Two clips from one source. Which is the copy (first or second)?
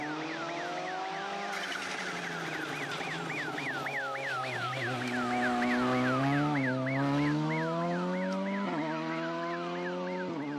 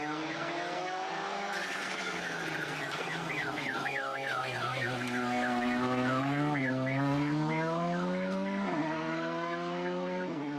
second